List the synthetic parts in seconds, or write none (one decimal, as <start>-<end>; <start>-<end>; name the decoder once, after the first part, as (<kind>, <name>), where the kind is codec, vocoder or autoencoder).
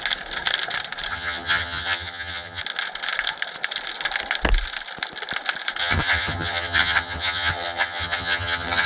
1.1-2.6 (vocoder, HiFi-GAN); 5.8-8.9